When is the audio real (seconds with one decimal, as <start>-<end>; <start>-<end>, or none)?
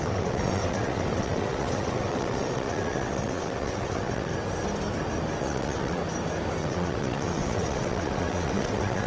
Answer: 4.3-5.4; 6.0-6.6